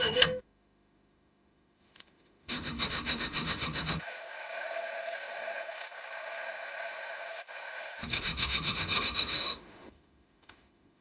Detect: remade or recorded remade